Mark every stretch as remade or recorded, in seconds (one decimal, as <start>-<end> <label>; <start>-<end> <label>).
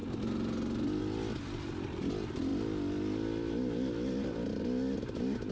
0.0-5.5 recorded